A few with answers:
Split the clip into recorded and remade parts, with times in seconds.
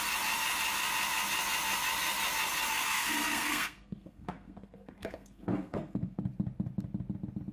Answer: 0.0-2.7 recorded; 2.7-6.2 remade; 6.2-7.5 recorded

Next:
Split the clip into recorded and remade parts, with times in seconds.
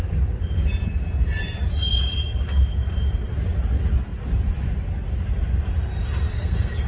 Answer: 0.0-6.3 recorded; 6.3-6.9 remade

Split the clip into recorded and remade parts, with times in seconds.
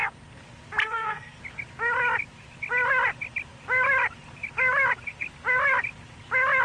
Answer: 0.0-0.8 recorded; 0.8-1.4 remade; 1.4-6.6 recorded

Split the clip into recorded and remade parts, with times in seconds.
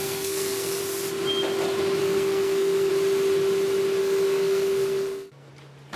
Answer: 0.0-0.8 remade; 0.8-2.0 recorded; 2.0-2.9 remade; 2.9-4.0 recorded; 4.0-5.5 remade; 5.5-6.0 recorded